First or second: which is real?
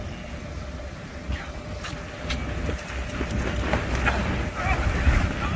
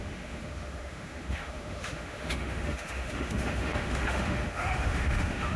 first